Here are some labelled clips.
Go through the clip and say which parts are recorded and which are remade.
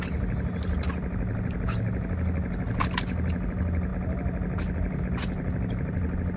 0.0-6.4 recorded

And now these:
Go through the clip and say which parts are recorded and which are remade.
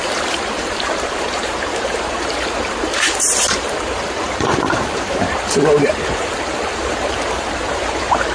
0.0-8.3 remade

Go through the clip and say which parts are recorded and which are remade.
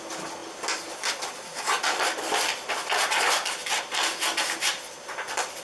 0.0-5.6 recorded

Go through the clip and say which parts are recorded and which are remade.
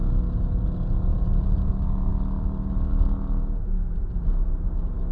0.0-1.1 recorded; 1.1-1.7 remade; 1.7-5.1 recorded